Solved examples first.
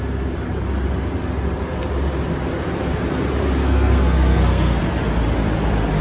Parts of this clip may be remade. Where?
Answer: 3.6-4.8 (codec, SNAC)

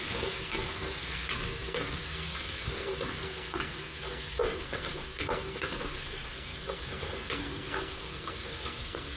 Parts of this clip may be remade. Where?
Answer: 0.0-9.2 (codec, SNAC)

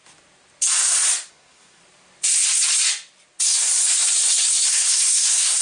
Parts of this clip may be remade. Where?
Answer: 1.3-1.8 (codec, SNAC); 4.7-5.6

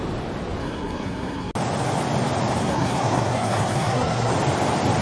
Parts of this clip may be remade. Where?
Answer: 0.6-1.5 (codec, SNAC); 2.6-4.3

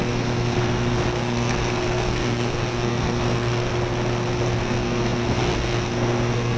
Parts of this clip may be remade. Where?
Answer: 0.0-3.7 (codec, SNAC); 4.6-6.6

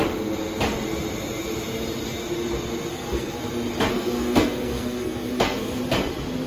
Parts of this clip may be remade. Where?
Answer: 2.9-3.4 (codec, SNAC); 3.9-5.8